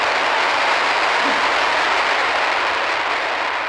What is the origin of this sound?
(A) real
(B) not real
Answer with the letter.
A